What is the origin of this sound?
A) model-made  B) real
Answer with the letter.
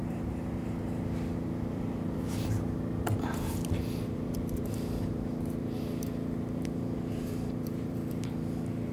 A